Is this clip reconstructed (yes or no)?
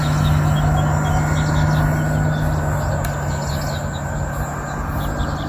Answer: no